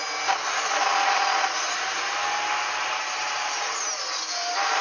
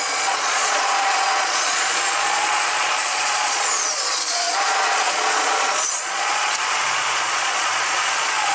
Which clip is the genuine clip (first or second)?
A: first